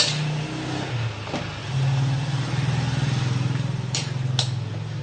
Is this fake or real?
real